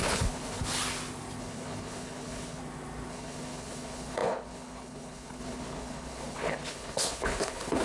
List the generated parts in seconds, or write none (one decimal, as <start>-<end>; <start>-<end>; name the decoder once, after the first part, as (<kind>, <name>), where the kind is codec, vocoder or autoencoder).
0.0-0.6 (codec, HILCodec); 1.4-2.6; 3.1-7.8

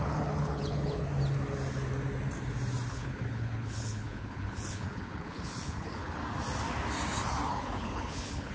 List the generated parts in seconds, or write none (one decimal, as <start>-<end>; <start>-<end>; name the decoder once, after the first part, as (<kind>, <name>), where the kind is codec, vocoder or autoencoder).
0.0-1.1 (codec, HILCodec); 2.9-6.2; 7.5-8.5

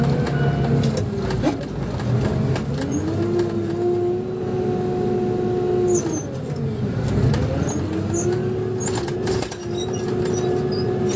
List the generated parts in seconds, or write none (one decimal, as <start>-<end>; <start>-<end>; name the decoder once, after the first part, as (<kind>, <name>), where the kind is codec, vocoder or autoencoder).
none

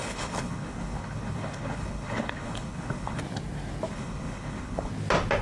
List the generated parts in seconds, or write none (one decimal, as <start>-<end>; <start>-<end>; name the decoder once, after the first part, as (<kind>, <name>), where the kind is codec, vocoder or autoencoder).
0.0-3.2 (codec, HILCodec); 3.9-4.9

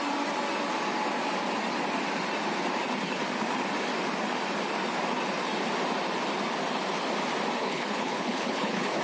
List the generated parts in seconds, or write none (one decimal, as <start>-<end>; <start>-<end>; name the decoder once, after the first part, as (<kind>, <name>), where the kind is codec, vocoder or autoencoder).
7.6-9.0 (codec, HILCodec)

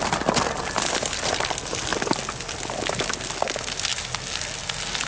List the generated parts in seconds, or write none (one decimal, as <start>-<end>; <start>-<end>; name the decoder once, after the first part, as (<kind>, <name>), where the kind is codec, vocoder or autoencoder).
none